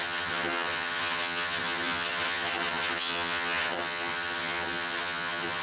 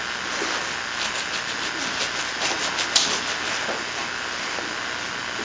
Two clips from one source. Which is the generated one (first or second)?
first